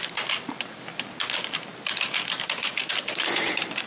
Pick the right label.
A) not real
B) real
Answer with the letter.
B